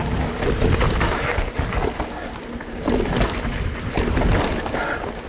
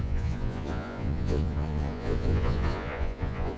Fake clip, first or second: second